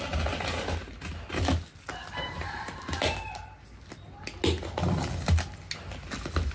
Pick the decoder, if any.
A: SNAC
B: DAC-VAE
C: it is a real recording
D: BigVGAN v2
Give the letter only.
C